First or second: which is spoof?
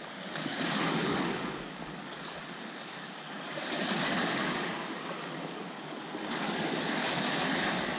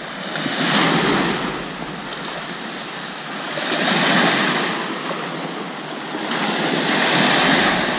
first